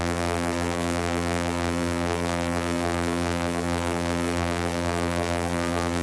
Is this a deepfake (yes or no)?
yes